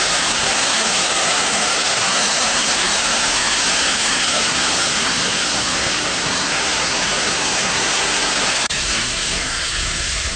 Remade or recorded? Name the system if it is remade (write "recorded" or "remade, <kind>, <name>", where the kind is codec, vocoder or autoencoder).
remade, codec, SNAC